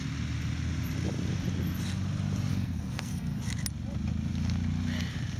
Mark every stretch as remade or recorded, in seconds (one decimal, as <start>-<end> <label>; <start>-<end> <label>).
0.0-2.5 recorded; 2.5-3.4 remade; 3.4-5.4 recorded

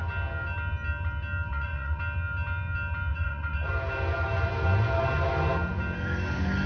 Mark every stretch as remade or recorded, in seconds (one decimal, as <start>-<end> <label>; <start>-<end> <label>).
0.0-1.5 recorded; 1.5-2.0 remade; 2.0-3.1 recorded; 3.1-3.7 remade; 3.7-6.7 recorded

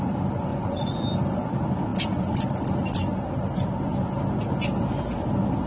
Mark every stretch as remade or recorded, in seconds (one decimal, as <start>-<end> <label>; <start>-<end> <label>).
0.0-0.5 recorded; 0.5-1.0 remade; 1.0-5.7 recorded

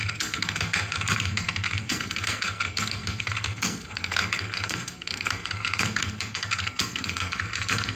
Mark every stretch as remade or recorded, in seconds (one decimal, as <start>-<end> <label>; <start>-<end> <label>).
0.0-8.0 remade

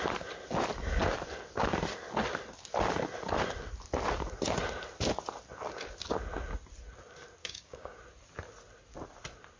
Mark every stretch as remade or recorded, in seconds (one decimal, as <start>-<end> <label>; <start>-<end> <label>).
0.0-7.4 recorded; 7.4-8.0 remade; 8.0-9.6 recorded